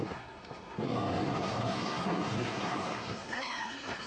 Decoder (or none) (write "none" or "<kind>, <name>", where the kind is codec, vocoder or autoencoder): codec, SNAC